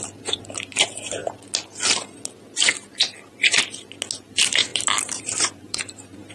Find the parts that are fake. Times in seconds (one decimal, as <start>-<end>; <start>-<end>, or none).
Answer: 0.0-1.2; 4.3-6.3